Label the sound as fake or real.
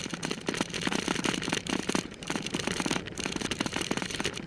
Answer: fake